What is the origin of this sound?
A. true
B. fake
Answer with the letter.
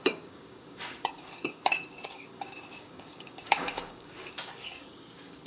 B